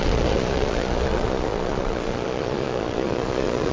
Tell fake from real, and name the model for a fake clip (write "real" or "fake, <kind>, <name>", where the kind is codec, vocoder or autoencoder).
fake, vocoder, Vocos